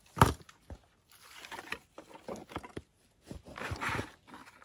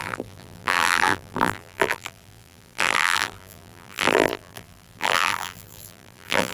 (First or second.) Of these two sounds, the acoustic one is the first